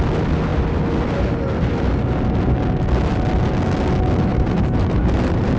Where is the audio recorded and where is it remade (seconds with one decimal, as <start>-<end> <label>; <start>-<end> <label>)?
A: 0.0-4.3 recorded; 4.3-5.6 remade